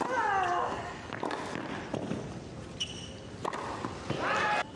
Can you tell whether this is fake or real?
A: real